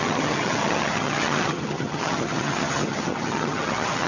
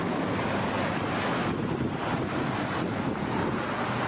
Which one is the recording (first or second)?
second